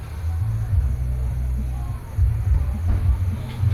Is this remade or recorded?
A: recorded